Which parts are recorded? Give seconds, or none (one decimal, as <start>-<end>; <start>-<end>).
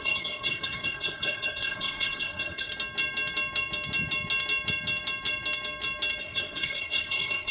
2.7-6.2